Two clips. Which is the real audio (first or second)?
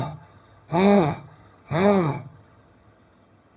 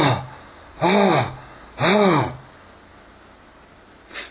second